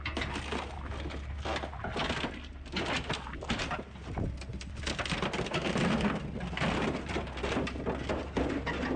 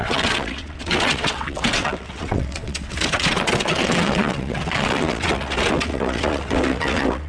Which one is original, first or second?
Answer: first